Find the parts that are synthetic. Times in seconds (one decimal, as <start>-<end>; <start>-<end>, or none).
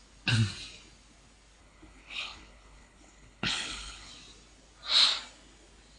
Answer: 1.6-4.1